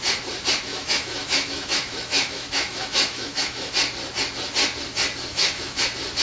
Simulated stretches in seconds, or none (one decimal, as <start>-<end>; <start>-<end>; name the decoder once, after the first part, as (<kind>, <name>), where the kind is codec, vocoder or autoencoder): 0.7-3.7 (autoencoder, DAC-VAE); 5.3-5.8